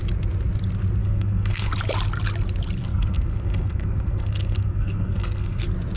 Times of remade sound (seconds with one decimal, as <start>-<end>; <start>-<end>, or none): 1.0-1.7; 2.8-5.6